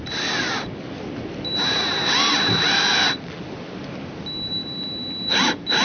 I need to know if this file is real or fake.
real